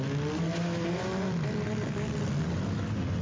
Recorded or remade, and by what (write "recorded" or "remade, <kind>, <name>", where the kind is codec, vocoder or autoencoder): recorded